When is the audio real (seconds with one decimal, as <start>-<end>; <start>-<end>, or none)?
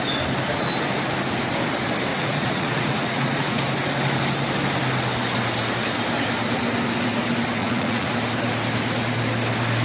0.0-2.1; 3.6-7.6; 8.1-9.8